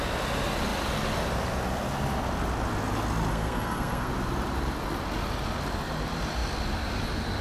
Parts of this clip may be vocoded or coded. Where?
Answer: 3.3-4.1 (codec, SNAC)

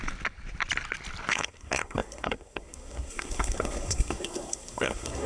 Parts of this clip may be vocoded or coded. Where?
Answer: 1.3-5.3 (codec, SNAC)

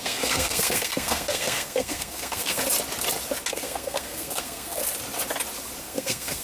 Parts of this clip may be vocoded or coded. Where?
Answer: 0.0-2.6 (codec, SNAC); 3.5-4.8; 5.8-6.4

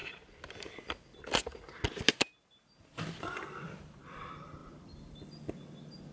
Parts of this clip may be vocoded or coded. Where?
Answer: none

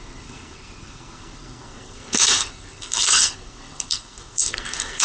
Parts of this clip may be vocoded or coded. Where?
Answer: 0.0-5.0 (codec, SNAC)

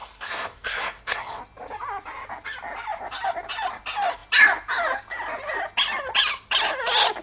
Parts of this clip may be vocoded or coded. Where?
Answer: 0.0-1.4 (codec, SNAC)

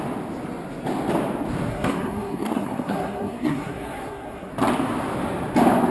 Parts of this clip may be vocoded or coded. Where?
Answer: 1.7-4.5 (codec, SNAC)

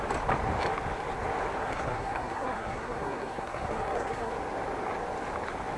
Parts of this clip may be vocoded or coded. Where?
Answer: 1.6-4.3 (codec, SNAC)